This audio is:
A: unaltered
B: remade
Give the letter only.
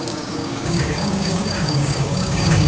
B